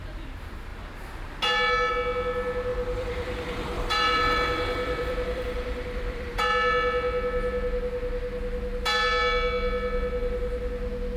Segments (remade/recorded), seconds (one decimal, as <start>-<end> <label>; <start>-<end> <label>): 0.0-2.7 recorded; 2.7-6.4 remade; 6.4-11.2 recorded